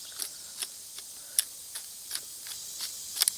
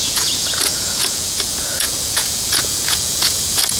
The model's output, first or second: second